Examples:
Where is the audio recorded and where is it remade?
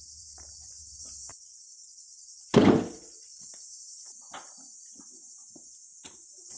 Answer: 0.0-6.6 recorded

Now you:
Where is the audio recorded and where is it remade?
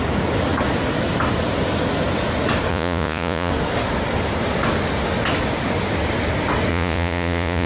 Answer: 0.0-2.7 recorded; 2.7-3.5 remade; 3.5-6.7 recorded; 6.7-7.7 remade